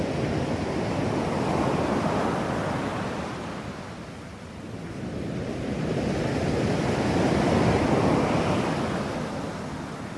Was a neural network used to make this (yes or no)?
no